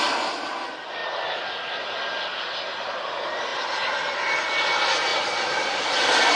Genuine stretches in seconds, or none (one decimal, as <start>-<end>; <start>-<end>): 0.0-1.0; 1.5-5.1